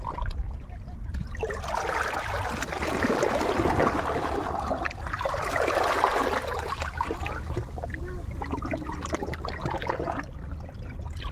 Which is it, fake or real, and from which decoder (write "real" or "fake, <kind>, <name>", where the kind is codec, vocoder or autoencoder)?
real